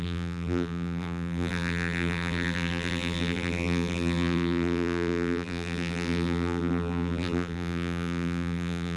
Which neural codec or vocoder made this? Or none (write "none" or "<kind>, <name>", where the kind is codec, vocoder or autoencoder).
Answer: vocoder, BigVGAN v2